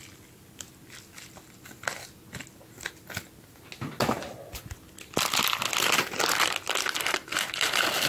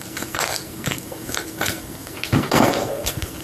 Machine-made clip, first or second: second